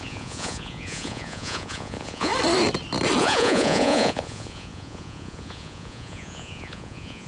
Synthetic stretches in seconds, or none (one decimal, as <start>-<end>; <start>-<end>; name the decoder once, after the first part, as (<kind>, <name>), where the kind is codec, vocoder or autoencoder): 0.0-2.3 (vocoder, Vocos); 3.2-7.3

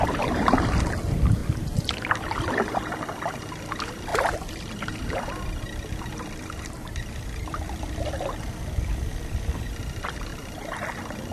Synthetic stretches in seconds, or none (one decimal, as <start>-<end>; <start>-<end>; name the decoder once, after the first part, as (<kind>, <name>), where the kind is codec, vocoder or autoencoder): 0.0-1.4 (vocoder, BigVGAN v2); 1.9-4.1; 6.7-10.3

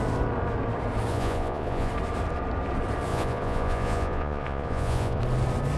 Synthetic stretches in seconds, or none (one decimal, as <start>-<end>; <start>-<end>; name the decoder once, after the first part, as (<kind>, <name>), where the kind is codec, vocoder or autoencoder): 1.1-1.9 (vocoder, Vocos); 3.1-5.2

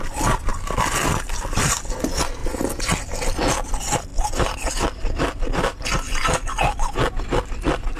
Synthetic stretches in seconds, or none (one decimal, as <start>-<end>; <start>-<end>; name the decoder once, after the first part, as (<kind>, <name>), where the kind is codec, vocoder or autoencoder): 0.5-1.8 (vocoder, BigVGAN v2); 2.4-3.0; 4.1-5.9

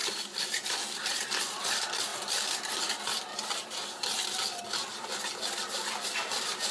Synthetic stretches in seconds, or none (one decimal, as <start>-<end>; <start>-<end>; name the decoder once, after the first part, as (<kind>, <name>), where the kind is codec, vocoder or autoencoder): 0.0-1.4 (vocoder, BigVGAN v2)